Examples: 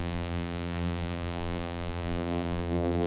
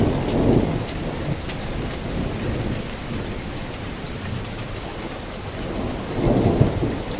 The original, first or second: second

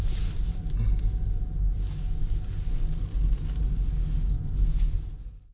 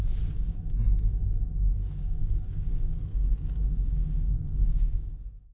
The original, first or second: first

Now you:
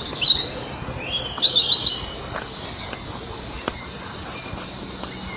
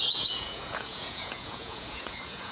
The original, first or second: first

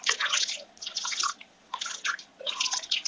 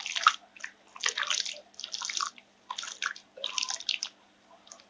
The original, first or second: second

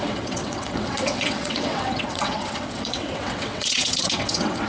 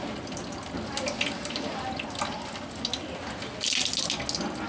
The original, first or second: second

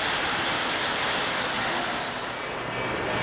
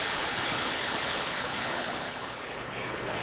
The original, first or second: first